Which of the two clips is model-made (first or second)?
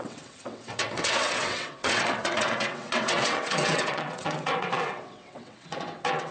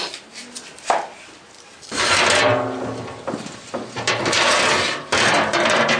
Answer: first